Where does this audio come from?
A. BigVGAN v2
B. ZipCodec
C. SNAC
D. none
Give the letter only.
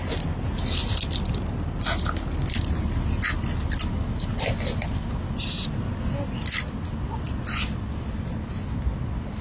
D